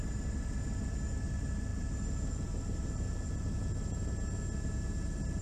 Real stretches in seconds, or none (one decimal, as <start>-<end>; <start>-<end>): 0.0-1.7; 4.1-5.4